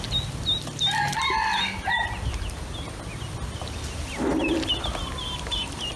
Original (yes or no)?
yes